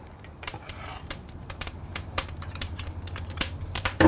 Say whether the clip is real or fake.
fake